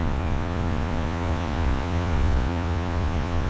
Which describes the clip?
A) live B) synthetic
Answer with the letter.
B